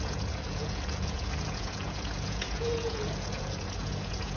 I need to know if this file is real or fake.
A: fake